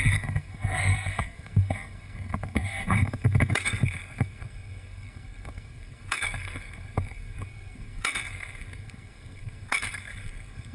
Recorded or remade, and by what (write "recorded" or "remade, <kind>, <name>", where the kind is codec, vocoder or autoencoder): remade, codec, SNAC